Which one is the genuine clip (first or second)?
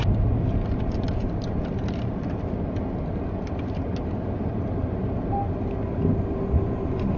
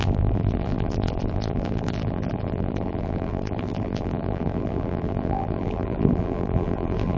first